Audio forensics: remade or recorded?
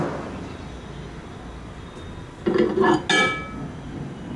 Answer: recorded